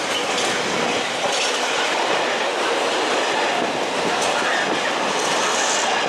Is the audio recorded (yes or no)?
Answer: yes